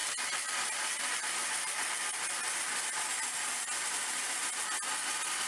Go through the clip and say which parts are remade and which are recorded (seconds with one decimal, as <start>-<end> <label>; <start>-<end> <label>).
0.0-5.5 recorded